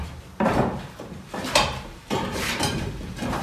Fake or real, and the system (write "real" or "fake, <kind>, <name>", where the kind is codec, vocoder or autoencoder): fake, vocoder, BigVGAN v2